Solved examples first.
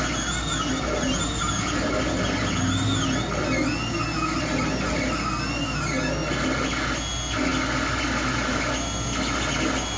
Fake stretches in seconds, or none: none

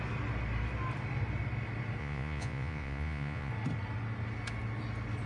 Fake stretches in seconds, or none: 2.0-3.5 (vocoder, Vocos)